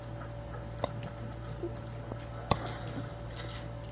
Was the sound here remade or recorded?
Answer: recorded